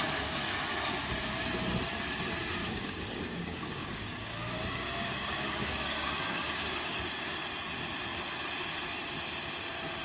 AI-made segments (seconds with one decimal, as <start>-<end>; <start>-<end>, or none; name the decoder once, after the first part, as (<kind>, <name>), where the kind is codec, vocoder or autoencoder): 2.6-7.0 (codec, DAC)